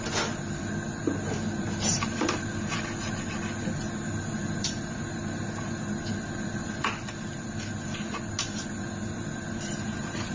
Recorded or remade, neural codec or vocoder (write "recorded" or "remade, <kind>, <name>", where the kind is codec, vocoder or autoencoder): recorded